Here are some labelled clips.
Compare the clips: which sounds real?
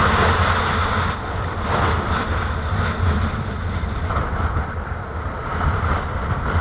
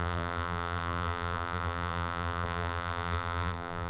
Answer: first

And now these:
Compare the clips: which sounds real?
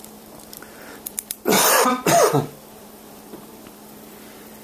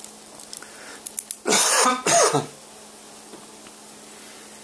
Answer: second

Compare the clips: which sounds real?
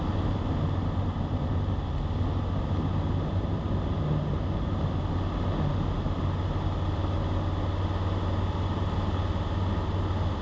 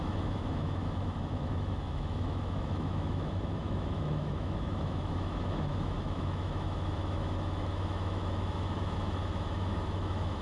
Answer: first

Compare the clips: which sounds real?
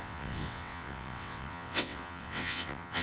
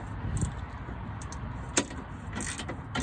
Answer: second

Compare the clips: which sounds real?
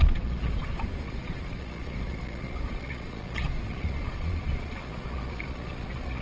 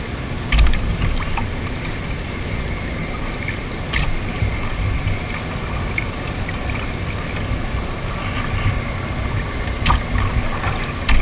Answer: second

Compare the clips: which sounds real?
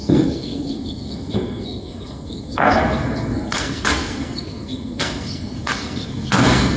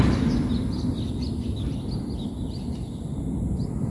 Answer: second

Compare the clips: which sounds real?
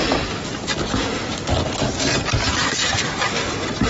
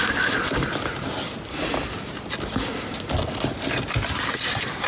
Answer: first